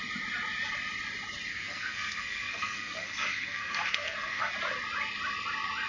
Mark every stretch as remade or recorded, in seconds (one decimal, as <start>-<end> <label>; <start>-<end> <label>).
0.0-1.5 recorded; 1.5-4.5 remade; 4.5-5.9 recorded